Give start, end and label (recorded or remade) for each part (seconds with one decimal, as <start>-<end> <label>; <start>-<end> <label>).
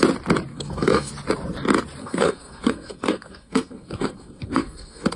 0.0-0.5 recorded; 0.5-1.1 remade; 1.1-2.0 recorded; 2.0-5.2 remade